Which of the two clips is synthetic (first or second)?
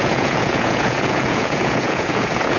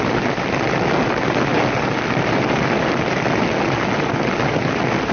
first